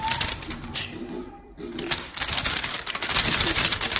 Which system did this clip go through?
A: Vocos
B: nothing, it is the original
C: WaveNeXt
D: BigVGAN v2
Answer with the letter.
D